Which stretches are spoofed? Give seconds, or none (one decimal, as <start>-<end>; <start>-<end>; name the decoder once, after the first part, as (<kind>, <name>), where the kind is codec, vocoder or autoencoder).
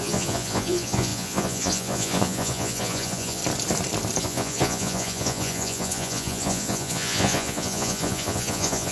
0.0-3.4 (vocoder, Vocos); 4.2-8.9